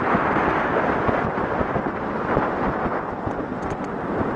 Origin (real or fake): real